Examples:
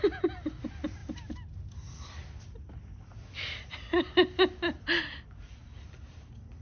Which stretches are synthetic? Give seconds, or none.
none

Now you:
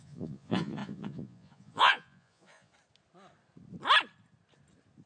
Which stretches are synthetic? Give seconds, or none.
0.0-2.7 (vocoder, Vocos)

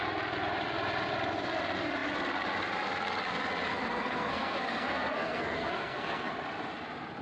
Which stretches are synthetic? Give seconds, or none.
3.7-6.3 (codec, SNAC)

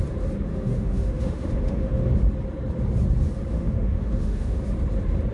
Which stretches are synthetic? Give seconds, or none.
0.5-2.1 (autoencoder, DAC-VAE); 3.5-4.6

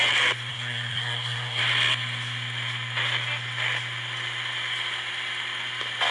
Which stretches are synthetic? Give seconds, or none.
0.5-1.6 (codec, SNAC)

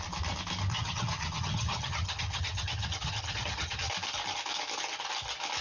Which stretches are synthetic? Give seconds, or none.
0.7-3.9 (vocoder, HiFi-GAN)

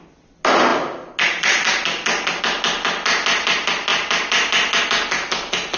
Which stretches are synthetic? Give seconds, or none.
none